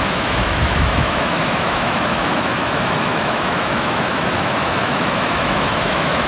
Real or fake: fake